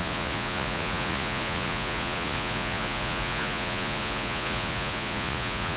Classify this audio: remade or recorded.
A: remade